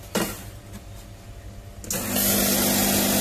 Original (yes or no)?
yes